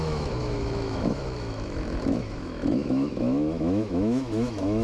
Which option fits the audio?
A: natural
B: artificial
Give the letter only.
B